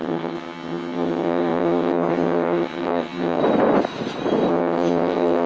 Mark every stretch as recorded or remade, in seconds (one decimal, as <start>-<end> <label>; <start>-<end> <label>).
0.0-3.4 remade; 3.4-4.5 recorded; 4.5-5.5 remade